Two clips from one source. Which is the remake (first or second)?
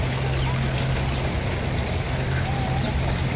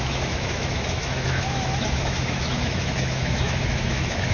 second